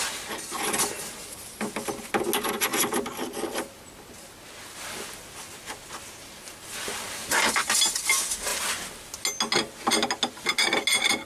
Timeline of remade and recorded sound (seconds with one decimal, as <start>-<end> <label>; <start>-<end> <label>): 0.0-11.3 recorded